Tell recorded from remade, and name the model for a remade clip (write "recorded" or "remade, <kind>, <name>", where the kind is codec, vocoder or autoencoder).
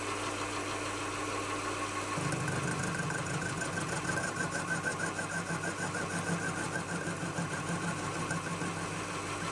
recorded